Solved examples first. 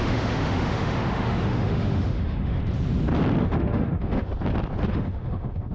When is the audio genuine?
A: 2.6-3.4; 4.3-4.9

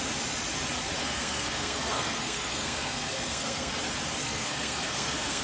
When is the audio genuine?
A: 0.0-1.0; 3.7-4.2

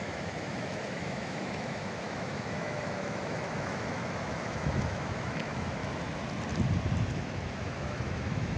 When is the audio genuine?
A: 5.8-7.0

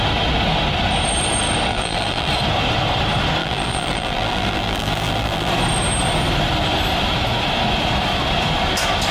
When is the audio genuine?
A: 0.0-1.7; 2.3-3.4; 5.5-9.1

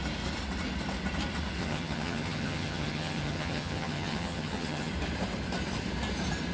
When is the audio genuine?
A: 0.0-1.6; 4.9-6.5